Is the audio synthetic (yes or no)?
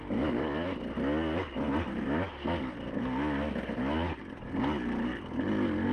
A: no